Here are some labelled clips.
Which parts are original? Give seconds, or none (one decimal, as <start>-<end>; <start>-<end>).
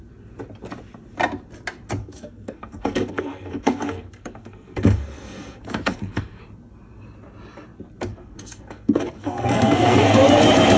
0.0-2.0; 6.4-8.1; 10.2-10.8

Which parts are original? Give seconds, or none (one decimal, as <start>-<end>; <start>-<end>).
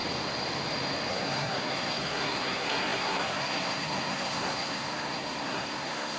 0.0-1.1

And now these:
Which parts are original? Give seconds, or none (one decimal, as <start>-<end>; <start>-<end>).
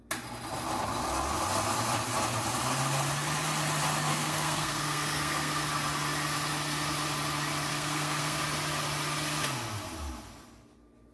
0.0-4.1; 5.5-7.7; 8.4-11.1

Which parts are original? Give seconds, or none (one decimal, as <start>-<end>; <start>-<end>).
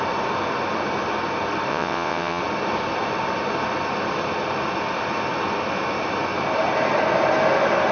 0.0-1.7; 2.4-7.9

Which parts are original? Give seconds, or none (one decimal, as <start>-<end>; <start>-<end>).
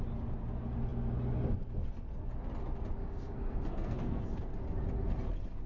0.0-3.0; 4.5-5.7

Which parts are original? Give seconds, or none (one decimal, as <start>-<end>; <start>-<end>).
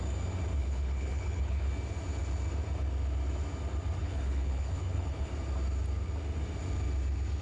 0.0-0.6; 1.7-4.0; 5.3-7.4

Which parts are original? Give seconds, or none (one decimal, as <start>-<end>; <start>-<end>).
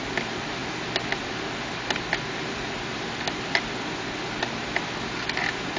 0.0-5.8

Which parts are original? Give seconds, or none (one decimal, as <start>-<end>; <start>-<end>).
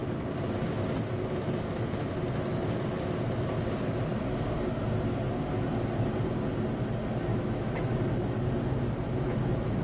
0.0-7.3; 8.0-9.8